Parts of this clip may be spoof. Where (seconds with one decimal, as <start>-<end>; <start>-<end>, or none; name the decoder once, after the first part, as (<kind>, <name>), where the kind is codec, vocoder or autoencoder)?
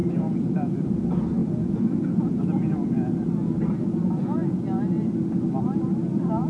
0.0-0.7 (vocoder, Vocos); 1.4-2.4; 3.8-4.6